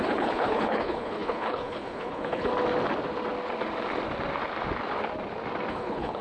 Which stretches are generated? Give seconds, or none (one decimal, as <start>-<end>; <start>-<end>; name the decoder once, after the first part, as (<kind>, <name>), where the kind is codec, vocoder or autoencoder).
0.0-2.5 (codec, HILCodec); 5.7-6.2